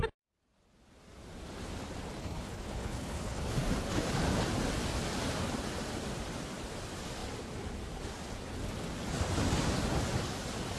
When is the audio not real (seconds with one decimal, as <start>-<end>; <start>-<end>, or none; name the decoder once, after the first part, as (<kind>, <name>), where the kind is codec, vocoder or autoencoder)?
2.2-3.4 (codec, HILCodec)